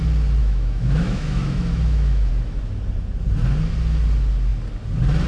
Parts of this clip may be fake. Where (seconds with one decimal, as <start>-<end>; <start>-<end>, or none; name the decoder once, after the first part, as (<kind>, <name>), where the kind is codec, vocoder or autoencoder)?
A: 0.4-2.3 (autoencoder, DAC-VAE)